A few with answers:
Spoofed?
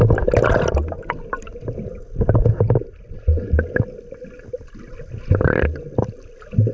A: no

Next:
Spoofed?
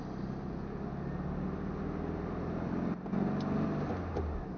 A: no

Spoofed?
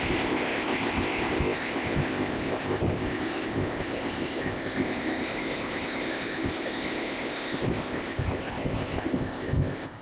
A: yes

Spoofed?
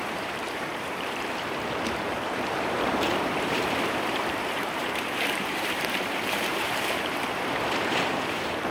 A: yes